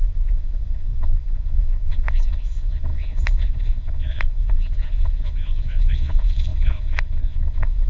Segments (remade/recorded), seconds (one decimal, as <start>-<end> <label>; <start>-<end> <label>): 0.0-7.9 remade